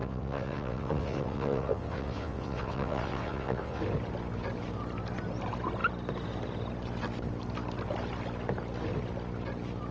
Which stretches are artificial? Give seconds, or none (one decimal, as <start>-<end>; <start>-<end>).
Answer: 0.0-3.8

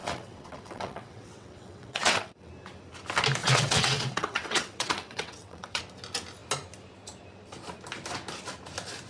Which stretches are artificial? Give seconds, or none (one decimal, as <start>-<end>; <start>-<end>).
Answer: 0.0-2.5; 3.4-5.8

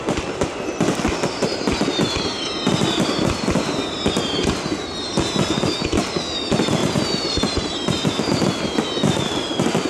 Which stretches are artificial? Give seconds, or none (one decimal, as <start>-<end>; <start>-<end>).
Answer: 6.8-8.2

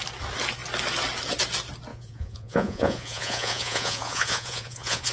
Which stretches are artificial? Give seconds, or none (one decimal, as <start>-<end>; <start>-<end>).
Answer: 1.9-5.1